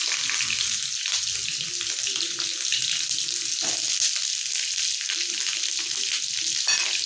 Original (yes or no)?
yes